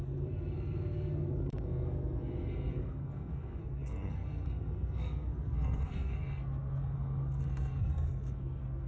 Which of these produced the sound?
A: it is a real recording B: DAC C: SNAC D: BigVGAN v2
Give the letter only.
C